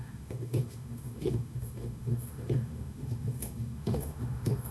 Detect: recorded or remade remade